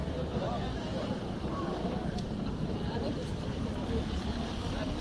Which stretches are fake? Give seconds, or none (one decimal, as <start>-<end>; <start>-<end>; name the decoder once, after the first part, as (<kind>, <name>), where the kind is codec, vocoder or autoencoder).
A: 0.0-5.0 (vocoder, BigVGAN v2)